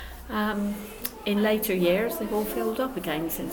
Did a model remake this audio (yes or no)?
no